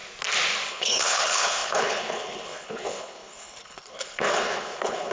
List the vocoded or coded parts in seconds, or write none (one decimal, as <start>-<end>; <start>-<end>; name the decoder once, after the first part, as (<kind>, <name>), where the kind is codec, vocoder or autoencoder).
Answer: 0.7-5.1 (codec, HILCodec)

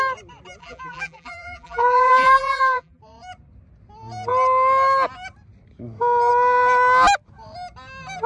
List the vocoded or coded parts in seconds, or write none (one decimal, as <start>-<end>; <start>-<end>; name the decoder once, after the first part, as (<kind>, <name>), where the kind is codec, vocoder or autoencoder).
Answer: 0.6-3.0 (vocoder, BigVGAN v2)

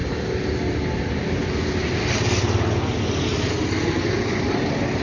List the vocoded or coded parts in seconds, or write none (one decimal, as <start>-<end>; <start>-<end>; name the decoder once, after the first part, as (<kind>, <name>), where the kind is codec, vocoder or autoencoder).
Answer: none

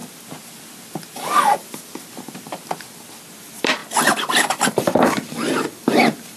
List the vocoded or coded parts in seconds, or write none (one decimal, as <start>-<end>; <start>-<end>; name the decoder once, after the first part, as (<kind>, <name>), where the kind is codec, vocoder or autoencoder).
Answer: 3.2-3.8 (vocoder, BigVGAN v2); 4.7-6.4

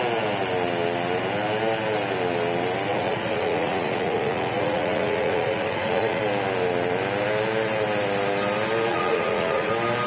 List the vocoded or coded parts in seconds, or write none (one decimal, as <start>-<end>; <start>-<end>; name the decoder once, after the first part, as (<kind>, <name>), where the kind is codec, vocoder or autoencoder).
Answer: 2.9-6.2 (vocoder, Vocos); 8.9-9.7

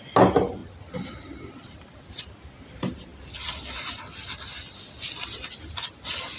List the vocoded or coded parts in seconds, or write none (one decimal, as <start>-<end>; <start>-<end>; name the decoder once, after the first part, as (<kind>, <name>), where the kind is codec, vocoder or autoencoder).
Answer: none